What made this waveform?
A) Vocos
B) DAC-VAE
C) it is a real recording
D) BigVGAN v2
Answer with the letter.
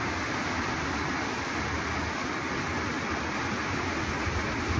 C